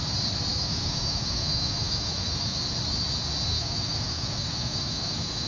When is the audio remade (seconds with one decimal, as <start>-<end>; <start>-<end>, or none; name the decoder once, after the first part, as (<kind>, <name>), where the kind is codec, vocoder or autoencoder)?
0.5-2.6 (autoencoder, DAC-VAE); 3.5-5.5